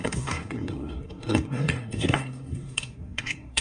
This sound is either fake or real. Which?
fake